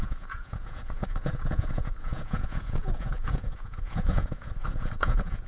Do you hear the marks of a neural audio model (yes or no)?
yes